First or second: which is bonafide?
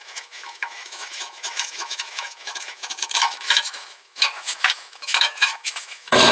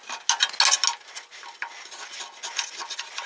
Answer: second